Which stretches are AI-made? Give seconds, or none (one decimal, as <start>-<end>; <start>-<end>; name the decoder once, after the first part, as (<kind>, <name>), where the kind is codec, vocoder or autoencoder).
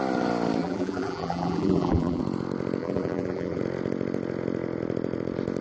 0.6-2.2 (vocoder, BigVGAN v2); 2.8-3.6